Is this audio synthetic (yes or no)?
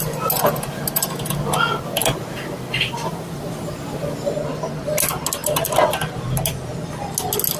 no